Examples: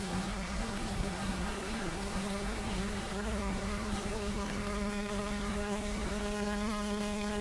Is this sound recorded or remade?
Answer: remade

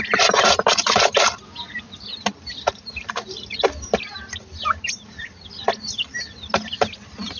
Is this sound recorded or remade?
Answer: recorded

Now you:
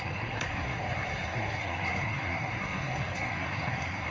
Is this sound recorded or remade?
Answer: remade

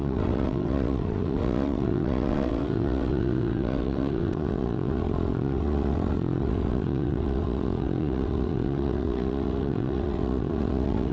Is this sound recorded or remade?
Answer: remade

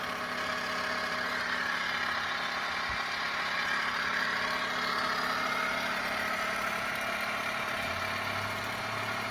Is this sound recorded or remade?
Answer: recorded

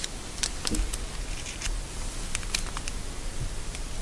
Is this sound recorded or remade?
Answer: recorded